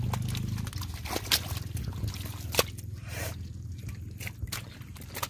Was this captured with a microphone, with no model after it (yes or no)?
yes